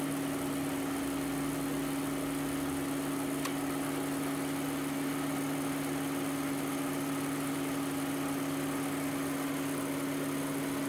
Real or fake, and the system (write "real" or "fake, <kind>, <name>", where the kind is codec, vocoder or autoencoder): real